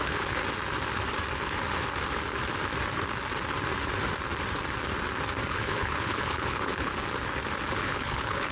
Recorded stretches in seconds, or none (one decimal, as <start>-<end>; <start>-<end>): 0.4-5.5; 6.9-7.7